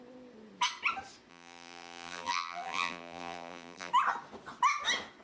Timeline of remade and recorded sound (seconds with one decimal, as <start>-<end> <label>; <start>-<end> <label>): 0.0-1.3 recorded; 1.3-3.9 remade; 3.9-5.2 recorded